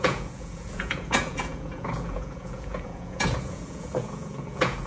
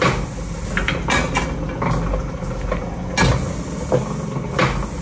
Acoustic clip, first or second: second